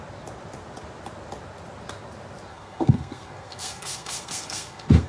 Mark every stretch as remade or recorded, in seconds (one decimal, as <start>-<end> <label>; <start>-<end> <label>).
0.0-2.5 recorded; 2.5-5.1 remade

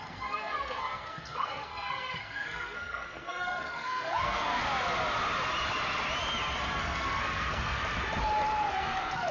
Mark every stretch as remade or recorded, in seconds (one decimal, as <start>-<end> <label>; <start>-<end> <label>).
0.0-4.6 remade; 4.6-6.8 recorded; 6.8-7.8 remade; 7.8-8.7 recorded; 8.7-9.3 remade

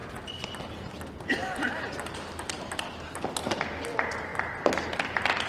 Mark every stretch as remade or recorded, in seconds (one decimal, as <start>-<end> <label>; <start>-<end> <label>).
0.0-5.5 recorded

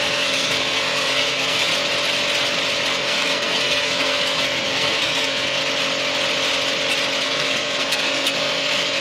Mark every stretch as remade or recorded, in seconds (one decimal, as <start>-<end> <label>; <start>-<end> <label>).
0.0-1.7 remade; 1.7-2.9 recorded; 2.9-5.6 remade; 5.6-7.2 recorded; 7.2-9.0 remade

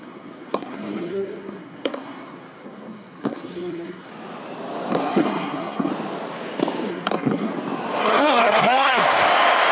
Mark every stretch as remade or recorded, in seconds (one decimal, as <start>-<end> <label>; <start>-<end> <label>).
0.0-4.1 remade; 4.1-4.9 recorded; 4.9-5.9 remade; 5.9-6.9 recorded; 6.9-7.5 remade; 7.5-8.0 recorded; 8.0-9.0 remade; 9.0-9.7 recorded

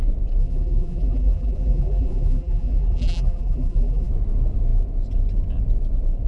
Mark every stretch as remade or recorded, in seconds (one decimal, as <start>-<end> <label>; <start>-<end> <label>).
0.0-0.4 recorded; 0.4-4.1 remade; 4.1-6.3 recorded